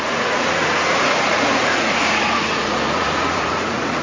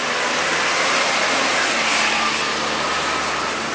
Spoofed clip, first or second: first